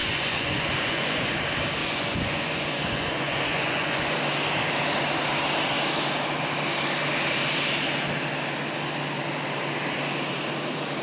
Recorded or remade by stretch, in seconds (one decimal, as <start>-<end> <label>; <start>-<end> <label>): 0.0-1.4 remade; 1.4-1.8 recorded; 1.8-4.1 remade; 4.1-11.0 recorded